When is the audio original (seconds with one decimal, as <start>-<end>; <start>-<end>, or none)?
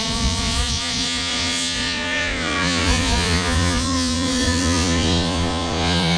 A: none